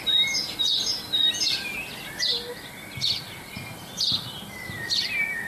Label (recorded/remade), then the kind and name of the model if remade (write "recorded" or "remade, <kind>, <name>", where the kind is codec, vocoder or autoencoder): recorded